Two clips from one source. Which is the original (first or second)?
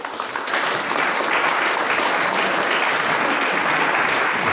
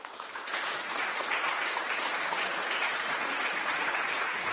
first